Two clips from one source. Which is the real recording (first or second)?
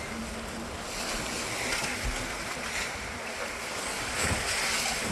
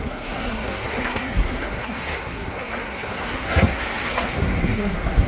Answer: first